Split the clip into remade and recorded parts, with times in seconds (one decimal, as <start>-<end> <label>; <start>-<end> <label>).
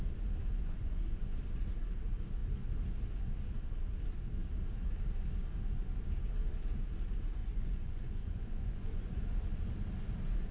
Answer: 0.0-0.6 recorded; 0.6-1.4 remade; 1.4-7.4 recorded; 7.4-9.2 remade; 9.2-10.5 recorded